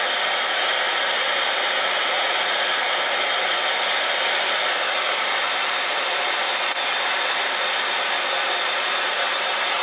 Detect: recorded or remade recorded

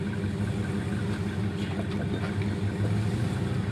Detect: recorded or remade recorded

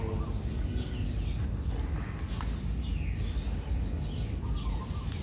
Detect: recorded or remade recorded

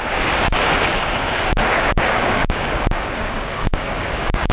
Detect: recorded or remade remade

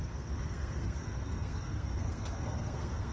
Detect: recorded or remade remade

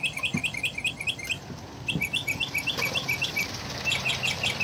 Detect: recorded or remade recorded